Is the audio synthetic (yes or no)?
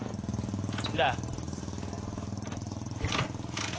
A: yes